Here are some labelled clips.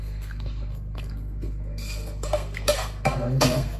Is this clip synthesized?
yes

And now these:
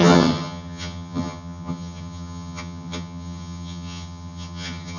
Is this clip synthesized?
yes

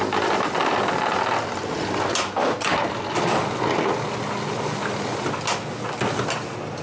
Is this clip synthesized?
no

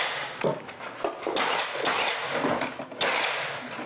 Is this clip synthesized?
no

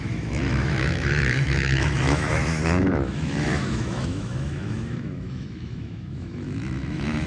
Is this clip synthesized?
yes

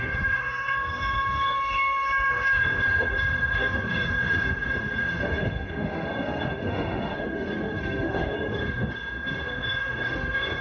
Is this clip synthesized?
yes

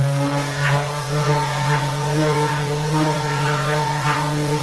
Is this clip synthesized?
yes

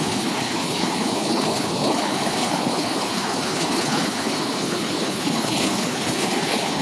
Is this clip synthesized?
yes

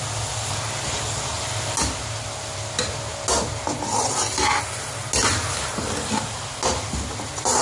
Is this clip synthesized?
no